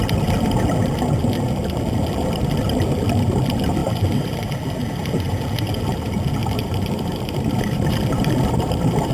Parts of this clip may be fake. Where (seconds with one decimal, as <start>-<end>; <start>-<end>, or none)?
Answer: 6.4-9.1